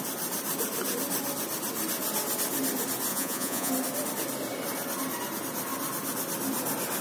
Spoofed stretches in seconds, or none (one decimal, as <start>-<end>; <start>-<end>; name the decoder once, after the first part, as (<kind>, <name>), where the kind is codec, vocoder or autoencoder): 3.1-3.7 (vocoder, Vocos)